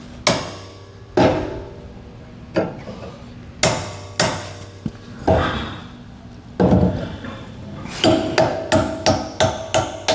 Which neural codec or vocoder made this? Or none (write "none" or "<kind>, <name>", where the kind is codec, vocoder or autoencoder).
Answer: none